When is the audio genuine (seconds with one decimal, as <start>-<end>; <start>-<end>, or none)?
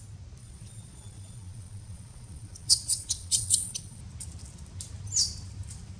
0.0-0.4; 4.0-6.0